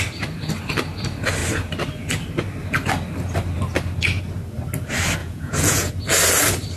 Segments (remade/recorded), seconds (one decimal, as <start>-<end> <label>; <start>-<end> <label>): 0.0-5.2 recorded; 5.2-5.9 remade; 5.9-6.8 recorded